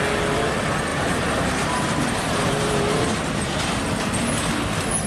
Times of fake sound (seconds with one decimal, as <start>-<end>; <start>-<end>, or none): 0.9-3.7